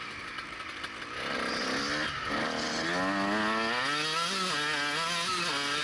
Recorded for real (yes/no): yes